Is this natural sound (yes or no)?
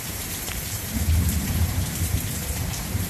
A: no